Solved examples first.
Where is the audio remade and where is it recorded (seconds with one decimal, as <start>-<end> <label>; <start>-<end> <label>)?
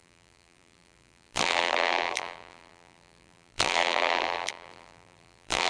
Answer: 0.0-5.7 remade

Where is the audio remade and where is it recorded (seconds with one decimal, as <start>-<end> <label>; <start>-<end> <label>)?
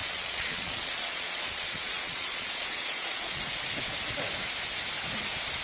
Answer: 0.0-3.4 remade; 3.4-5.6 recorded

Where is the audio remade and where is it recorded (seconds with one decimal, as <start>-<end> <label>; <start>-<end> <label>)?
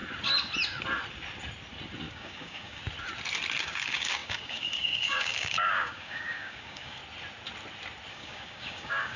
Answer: 0.0-2.1 recorded; 2.1-2.8 remade; 2.8-3.6 recorded; 3.6-7.0 remade; 7.0-8.1 recorded; 8.1-9.2 remade